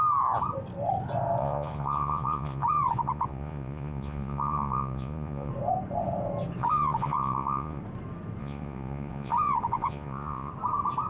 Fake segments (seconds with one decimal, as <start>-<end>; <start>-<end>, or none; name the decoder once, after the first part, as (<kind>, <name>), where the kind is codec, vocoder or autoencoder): 1.4-5.5 (vocoder, Vocos); 6.6-7.8; 8.4-10.5